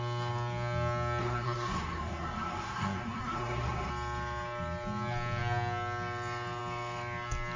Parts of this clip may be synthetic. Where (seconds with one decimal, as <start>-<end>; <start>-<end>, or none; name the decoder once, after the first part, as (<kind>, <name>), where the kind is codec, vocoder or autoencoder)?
1.2-3.9 (codec, SNAC)

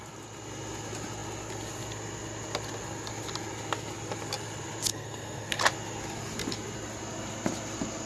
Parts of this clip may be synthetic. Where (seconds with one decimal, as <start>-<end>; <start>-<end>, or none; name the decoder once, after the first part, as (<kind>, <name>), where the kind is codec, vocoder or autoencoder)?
4.9-5.6 (codec, SNAC)

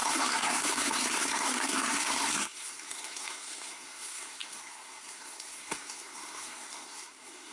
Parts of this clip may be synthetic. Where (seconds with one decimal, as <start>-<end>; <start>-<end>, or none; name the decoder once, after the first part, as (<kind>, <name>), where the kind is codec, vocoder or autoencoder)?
0.0-7.5 (codec, SNAC)

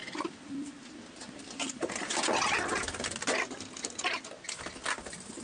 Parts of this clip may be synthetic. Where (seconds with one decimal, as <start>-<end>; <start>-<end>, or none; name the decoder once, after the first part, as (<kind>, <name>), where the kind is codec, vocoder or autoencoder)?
0.0-0.5 (vocoder, BigVGAN v2); 1.2-2.1